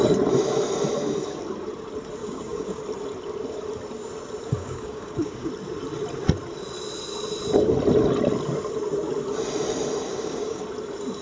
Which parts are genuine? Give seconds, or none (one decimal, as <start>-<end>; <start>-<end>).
0.0-2.2; 2.8-4.5; 5.5-10.1; 10.6-11.2